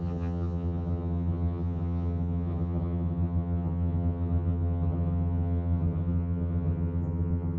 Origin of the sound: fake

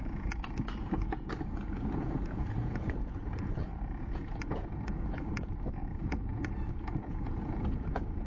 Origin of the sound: fake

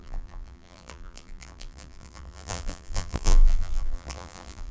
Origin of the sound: fake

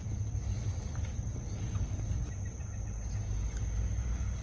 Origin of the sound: real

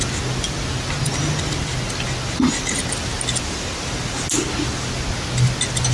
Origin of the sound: real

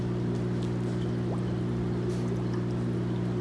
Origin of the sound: real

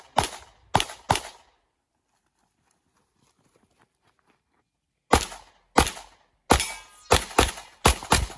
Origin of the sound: real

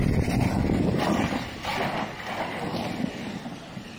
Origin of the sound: real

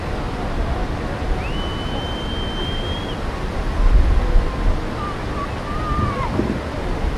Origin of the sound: real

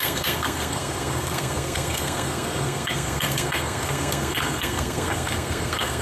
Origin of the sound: fake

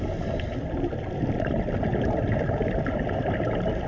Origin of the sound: real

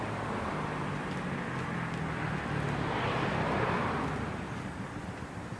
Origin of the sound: real